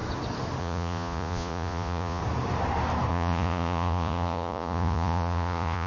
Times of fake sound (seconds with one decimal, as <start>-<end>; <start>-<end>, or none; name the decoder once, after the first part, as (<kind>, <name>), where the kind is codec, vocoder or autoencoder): 0.6-2.2 (vocoder, Vocos); 3.1-5.9